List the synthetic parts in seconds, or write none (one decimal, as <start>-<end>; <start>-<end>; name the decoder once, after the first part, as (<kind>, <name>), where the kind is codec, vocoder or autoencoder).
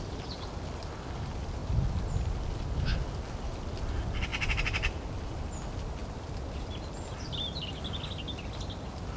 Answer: none